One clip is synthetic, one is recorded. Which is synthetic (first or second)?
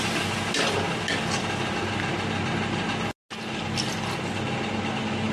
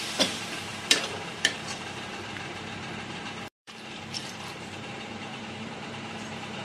second